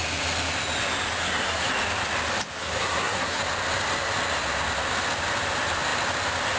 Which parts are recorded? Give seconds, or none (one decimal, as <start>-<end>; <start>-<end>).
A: 0.0-1.2; 1.7-2.6; 3.4-6.6